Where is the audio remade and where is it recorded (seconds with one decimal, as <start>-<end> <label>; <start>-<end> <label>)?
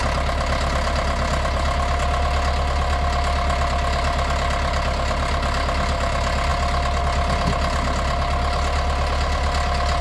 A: 0.0-10.0 recorded